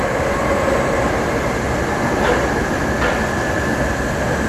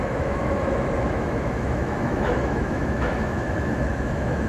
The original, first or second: first